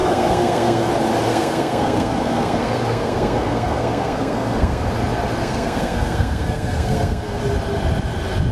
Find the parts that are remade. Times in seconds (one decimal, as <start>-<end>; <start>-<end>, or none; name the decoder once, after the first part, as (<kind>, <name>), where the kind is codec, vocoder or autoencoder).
0.0-0.9 (codec, SNAC); 1.3-4.9; 5.4-7.4